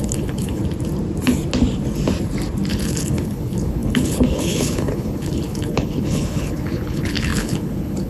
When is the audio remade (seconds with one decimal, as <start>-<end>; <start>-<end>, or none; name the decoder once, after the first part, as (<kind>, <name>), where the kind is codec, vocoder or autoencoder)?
0.0-0.6 (codec, HILCodec); 2.7-8.1